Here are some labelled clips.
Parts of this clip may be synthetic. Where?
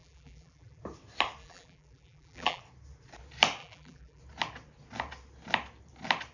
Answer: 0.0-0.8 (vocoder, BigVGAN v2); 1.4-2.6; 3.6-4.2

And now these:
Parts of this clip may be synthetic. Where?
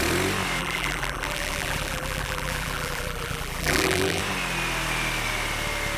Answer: 0.6-4.2 (vocoder, BigVGAN v2)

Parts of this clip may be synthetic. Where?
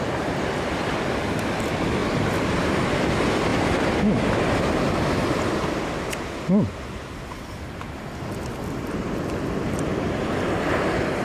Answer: 0.0-2.0 (vocoder, BigVGAN v2); 2.6-3.5; 5.1-11.2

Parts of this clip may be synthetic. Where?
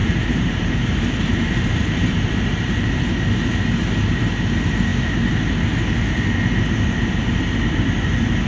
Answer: 0.0-3.0 (vocoder, BigVGAN v2)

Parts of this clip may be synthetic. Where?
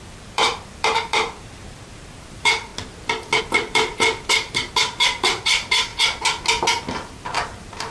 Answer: 0.0-2.7 (vocoder, BigVGAN v2); 3.4-5.9; 6.9-7.9